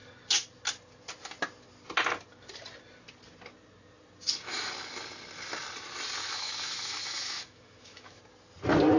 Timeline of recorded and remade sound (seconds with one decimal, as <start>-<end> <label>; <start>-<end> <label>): 0.0-6.2 recorded; 6.2-8.2 remade; 8.2-9.0 recorded